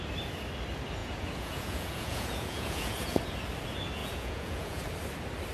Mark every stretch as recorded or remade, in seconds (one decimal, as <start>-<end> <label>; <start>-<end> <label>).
0.0-1.0 recorded; 1.0-3.2 remade; 3.2-4.0 recorded; 4.0-4.8 remade; 4.8-5.5 recorded